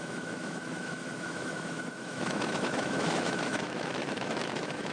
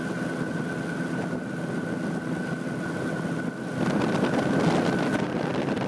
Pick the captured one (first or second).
second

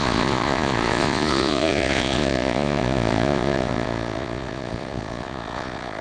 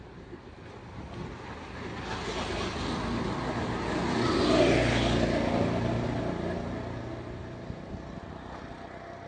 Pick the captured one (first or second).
second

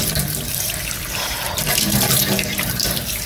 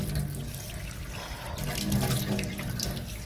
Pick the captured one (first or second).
second